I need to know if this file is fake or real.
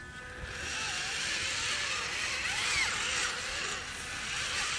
real